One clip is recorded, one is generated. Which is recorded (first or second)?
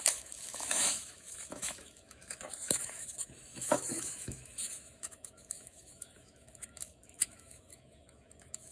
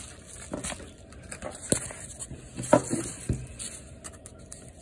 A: second